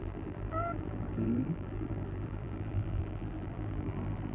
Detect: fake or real fake